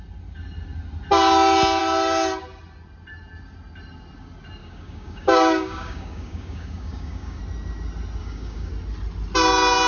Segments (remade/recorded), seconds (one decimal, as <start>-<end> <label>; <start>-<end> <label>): 0.0-4.6 recorded; 4.6-7.4 remade; 7.4-8.2 recorded; 8.2-8.7 remade; 8.7-9.9 recorded